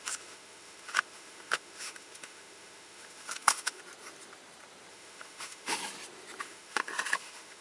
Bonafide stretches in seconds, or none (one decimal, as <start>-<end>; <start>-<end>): 3.8-4.9; 5.8-6.4